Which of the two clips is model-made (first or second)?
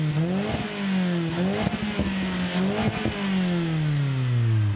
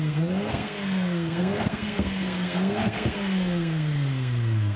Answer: second